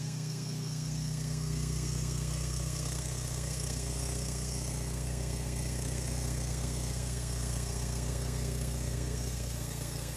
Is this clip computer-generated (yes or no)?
yes